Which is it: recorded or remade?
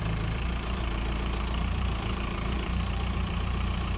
remade